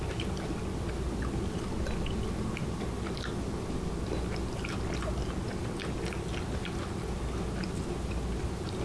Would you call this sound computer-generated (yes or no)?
no